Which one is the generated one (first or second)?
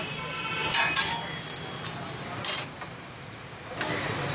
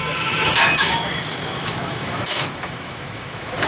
second